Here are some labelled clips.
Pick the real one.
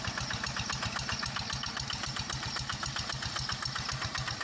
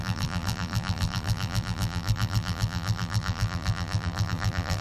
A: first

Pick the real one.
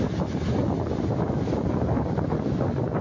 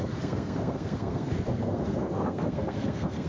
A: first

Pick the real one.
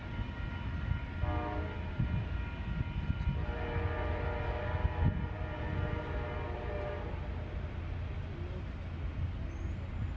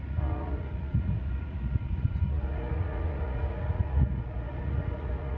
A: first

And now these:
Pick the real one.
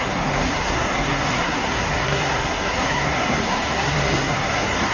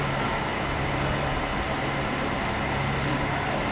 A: second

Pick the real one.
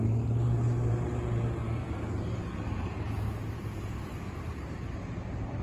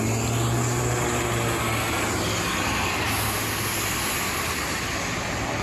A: second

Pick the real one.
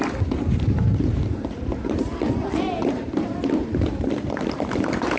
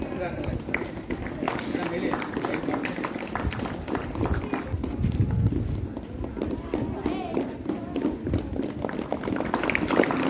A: second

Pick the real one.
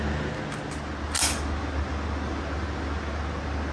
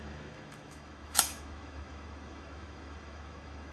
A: first